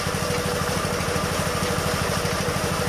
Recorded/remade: remade